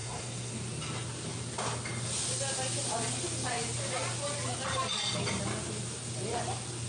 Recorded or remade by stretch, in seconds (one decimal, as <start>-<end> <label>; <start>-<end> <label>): 0.0-0.5 remade; 0.5-6.9 recorded